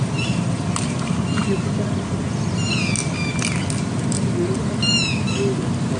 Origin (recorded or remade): recorded